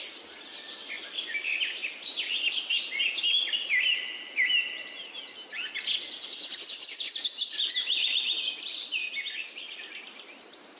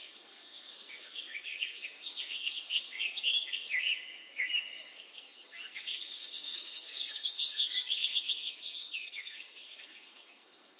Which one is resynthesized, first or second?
second